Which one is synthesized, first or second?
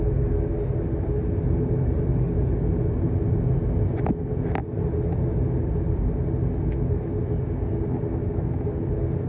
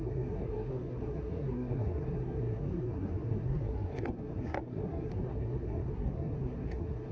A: second